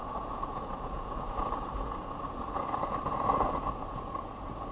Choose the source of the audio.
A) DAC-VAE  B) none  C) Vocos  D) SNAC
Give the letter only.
C